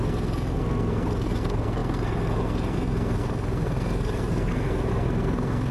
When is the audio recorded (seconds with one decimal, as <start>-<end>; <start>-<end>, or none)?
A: none